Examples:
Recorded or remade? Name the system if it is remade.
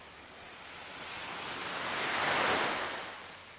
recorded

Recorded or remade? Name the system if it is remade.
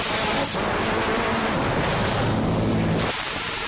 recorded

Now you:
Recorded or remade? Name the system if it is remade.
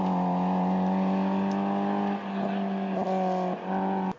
recorded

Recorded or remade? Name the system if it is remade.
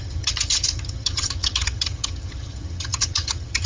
remade, vocoder, HiFi-GAN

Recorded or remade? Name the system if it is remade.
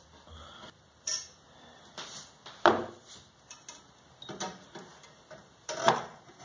recorded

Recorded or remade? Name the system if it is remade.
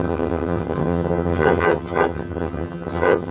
remade, vocoder, HiFi-GAN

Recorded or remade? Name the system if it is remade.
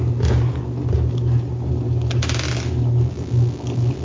recorded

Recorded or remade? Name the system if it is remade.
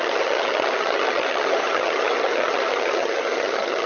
remade, vocoder, HiFi-GAN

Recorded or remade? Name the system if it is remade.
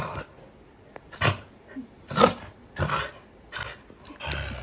recorded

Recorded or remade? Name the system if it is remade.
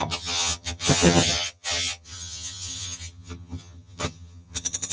remade, vocoder, HiFi-GAN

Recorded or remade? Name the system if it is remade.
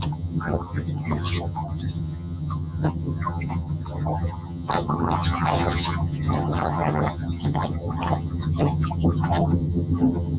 remade, vocoder, HiFi-GAN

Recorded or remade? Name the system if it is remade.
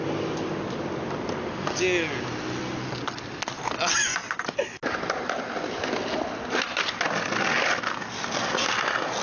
recorded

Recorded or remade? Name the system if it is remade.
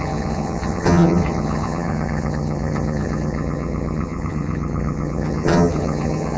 remade, vocoder, HiFi-GAN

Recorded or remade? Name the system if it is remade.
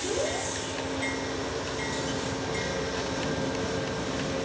recorded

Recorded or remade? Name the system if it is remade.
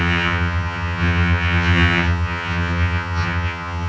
remade, vocoder, HiFi-GAN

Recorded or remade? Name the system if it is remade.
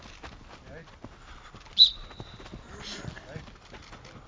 recorded